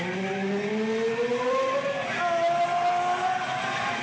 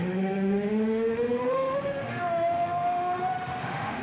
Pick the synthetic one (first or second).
second